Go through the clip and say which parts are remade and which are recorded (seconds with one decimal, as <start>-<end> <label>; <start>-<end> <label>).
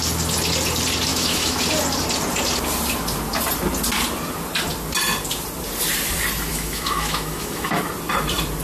0.0-1.1 recorded; 1.1-1.6 remade; 1.6-6.5 recorded; 6.5-7.8 remade; 7.8-8.6 recorded